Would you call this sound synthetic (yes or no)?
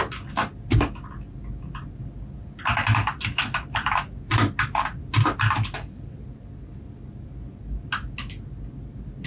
no